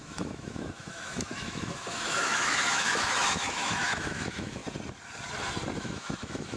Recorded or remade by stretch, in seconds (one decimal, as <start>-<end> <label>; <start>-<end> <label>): 0.0-4.6 remade; 4.6-5.8 recorded; 5.8-6.6 remade